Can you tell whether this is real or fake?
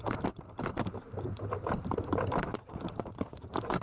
fake